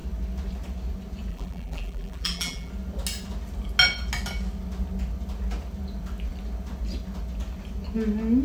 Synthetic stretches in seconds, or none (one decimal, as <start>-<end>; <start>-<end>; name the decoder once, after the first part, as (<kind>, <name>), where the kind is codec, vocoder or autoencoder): 1.3-2.7 (vocoder, BigVGAN v2)